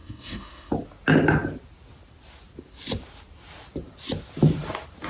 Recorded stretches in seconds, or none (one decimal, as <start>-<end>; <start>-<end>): 0.7-5.1